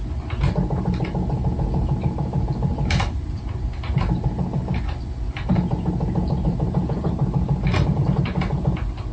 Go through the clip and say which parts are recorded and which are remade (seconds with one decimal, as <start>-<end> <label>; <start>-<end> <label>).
0.0-9.1 recorded

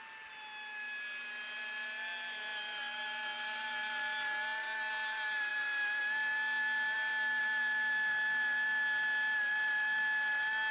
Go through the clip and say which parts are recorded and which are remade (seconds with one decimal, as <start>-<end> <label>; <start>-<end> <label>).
0.0-10.7 recorded